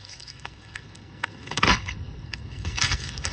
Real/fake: fake